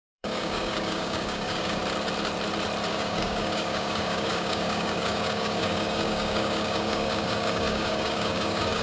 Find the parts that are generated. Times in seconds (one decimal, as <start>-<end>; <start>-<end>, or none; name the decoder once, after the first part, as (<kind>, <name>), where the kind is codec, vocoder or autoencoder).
0.0-1.8 (codec, DAC); 2.9-8.8